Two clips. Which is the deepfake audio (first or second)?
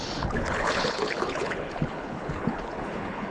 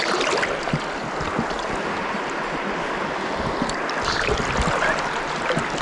first